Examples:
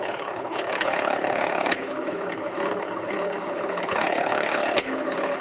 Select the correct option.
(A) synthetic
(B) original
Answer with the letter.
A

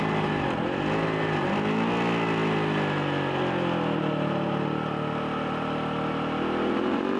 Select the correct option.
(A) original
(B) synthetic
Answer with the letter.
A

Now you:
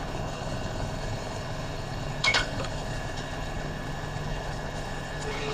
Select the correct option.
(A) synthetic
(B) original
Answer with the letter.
A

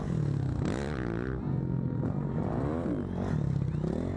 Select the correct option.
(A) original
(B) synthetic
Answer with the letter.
A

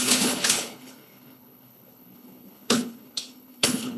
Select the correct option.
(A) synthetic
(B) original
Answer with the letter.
A